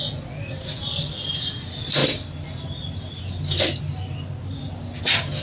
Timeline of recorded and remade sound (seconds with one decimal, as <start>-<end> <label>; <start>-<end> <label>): 0.0-5.4 recorded